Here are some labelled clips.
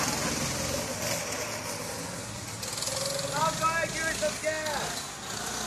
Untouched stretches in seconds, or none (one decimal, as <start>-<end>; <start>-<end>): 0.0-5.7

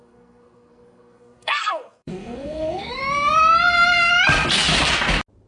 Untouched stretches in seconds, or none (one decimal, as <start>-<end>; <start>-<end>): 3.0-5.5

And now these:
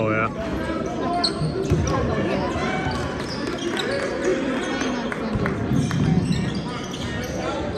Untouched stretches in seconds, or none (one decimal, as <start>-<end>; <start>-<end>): 0.0-7.8

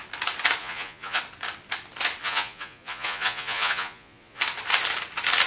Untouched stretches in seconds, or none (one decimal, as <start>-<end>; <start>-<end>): 0.0-0.6; 1.2-2.2; 4.4-5.5

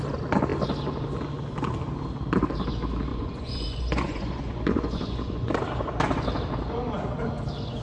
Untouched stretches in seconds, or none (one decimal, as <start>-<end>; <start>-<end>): 0.0-3.1; 5.5-7.8

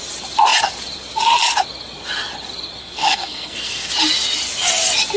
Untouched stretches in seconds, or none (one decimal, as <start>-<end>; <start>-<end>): 0.0-2.8; 3.9-5.2

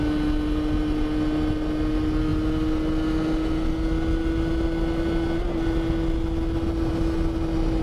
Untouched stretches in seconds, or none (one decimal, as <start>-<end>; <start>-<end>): 0.0-7.8